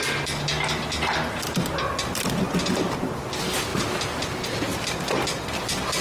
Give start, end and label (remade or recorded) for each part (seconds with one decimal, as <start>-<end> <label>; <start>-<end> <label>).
0.0-6.0 recorded